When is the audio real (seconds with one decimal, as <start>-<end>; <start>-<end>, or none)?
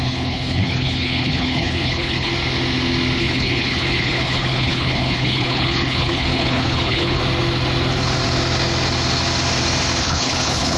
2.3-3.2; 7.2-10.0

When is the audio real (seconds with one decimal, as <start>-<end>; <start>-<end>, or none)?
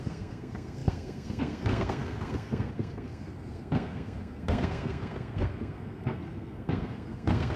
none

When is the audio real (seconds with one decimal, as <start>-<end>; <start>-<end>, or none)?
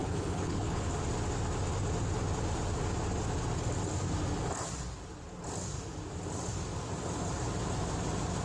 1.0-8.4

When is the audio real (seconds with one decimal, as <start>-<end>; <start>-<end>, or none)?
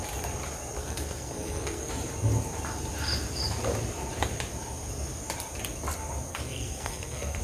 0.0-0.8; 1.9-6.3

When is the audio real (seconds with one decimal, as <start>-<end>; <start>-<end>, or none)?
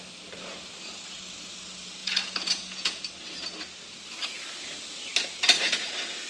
0.0-2.0; 3.0-6.3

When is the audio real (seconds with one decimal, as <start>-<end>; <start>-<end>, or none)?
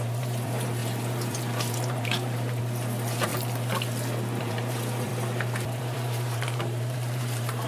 3.3-4.4; 5.1-5.8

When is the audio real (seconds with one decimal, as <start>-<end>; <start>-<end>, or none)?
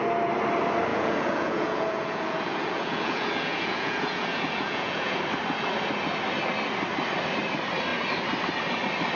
0.0-0.9; 5.2-9.2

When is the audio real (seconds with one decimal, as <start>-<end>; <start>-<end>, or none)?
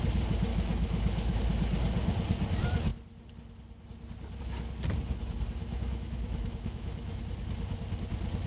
0.0-0.5; 1.4-5.6; 7.2-8.5